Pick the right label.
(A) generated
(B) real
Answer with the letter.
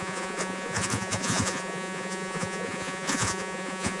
A